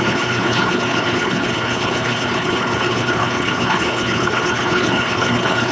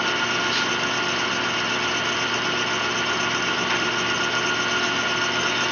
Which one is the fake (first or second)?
first